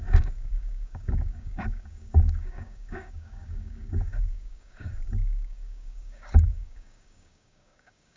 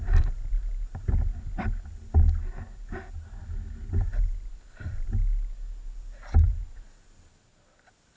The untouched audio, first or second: second